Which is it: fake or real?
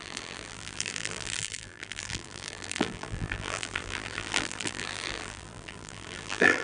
fake